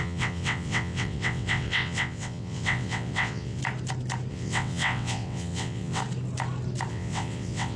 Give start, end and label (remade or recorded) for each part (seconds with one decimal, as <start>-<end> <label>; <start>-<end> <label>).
0.0-3.6 remade; 3.6-4.3 recorded; 4.3-6.0 remade; 6.0-6.9 recorded; 6.9-7.8 remade